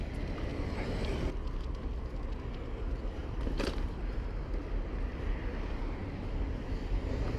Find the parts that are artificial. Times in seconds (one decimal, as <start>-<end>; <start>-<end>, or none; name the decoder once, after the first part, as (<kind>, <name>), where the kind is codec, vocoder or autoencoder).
0.5-1.1 (vocoder, BigVGAN v2); 3.2-4.4